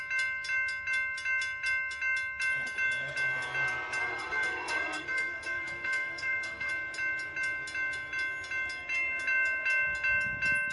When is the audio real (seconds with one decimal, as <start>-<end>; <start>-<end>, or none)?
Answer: 0.0-4.0; 6.7-10.7